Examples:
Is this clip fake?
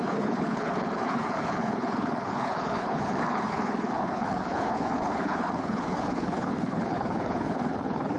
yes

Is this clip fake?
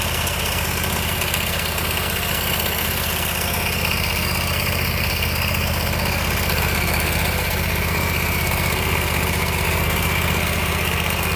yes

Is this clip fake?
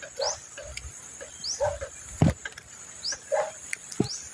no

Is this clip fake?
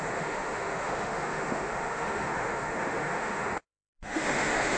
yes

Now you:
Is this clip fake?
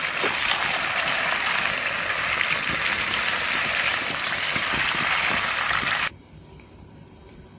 yes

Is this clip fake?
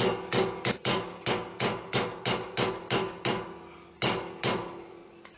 no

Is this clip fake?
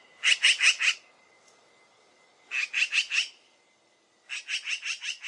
no